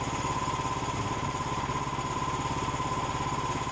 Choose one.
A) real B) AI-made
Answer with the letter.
A